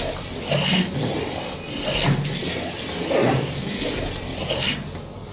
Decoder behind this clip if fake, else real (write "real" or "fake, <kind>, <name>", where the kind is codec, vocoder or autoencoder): real